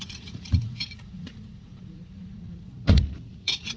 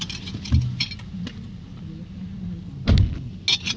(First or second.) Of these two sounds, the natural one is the second